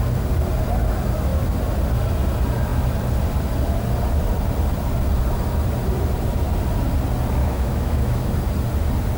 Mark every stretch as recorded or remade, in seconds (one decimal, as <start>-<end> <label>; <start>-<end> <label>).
0.0-7.4 recorded; 7.4-8.3 remade; 8.3-9.2 recorded